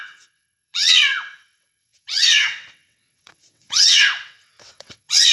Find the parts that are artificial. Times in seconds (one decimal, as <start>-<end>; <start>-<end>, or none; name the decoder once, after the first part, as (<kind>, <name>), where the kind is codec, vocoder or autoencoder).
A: 0.0-5.3 (vocoder, WaveNeXt)